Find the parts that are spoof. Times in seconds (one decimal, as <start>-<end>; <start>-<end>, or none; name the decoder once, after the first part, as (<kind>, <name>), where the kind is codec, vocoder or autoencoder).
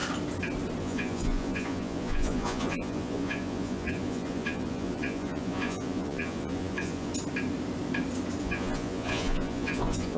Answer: 0.8-7.1 (vocoder, Vocos); 8.4-10.2